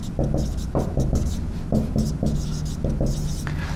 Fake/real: real